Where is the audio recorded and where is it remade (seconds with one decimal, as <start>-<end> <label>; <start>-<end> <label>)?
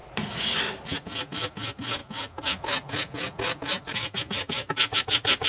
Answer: 0.0-5.5 recorded